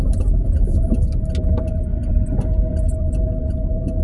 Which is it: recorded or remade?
recorded